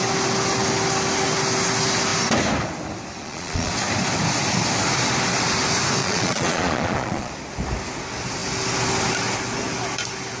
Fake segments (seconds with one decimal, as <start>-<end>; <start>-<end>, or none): 3.2-3.7; 6.0-7.3